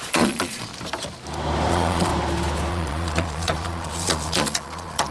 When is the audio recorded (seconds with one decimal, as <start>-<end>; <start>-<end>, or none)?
0.7-1.7; 2.1-2.7